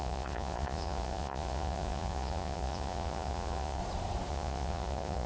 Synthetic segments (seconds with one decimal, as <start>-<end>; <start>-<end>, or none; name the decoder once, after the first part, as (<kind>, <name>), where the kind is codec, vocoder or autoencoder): 0.0-3.8 (vocoder, Vocos); 4.3-5.3